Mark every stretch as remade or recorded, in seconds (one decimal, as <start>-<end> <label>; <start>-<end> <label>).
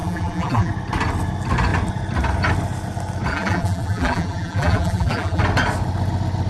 0.0-0.7 remade; 0.7-3.3 recorded; 3.3-5.4 remade; 5.4-6.5 recorded